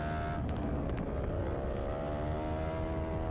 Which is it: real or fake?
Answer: real